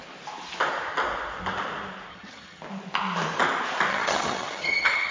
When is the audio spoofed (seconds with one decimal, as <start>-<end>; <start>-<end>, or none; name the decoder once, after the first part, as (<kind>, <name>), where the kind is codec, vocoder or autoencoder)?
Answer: 2.1-2.6 (vocoder, HiFi-GAN); 3.9-5.1